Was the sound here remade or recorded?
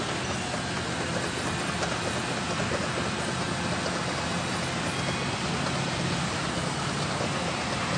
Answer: recorded